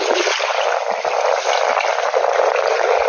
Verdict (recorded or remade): recorded